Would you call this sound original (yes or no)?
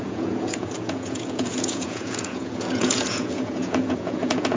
no